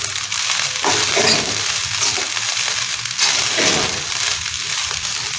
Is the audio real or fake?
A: real